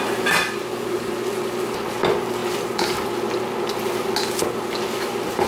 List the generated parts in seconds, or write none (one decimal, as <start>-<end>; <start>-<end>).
none